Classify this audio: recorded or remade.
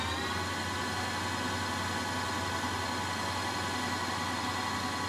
recorded